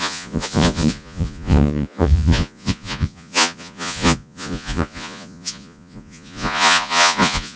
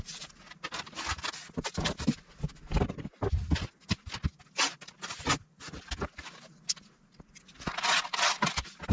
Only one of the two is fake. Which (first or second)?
first